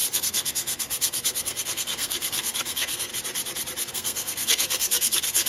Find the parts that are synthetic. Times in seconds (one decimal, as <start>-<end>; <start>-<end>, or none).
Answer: 0.0-3.1; 3.9-5.5